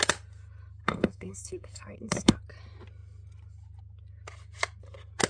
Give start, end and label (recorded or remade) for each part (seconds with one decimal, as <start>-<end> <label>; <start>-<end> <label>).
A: 0.0-0.8 recorded; 0.8-2.3 remade; 2.3-5.3 recorded